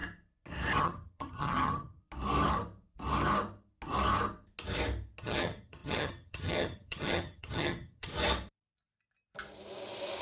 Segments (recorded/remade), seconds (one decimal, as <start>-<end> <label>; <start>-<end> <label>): 0.0-0.8 recorded; 0.8-2.0 remade; 2.0-5.2 recorded; 5.2-8.1 remade; 8.1-10.2 recorded